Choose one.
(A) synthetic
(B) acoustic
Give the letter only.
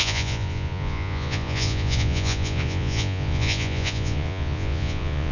A